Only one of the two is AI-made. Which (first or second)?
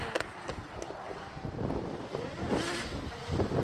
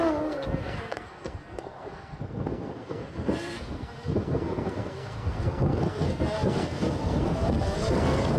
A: second